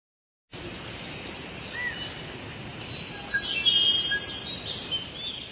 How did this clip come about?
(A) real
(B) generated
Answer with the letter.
A